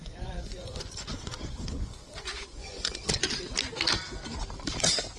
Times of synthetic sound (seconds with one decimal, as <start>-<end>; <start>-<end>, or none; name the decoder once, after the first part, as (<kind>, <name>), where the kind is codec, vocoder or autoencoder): 0.0-3.1 (vocoder, Vocos)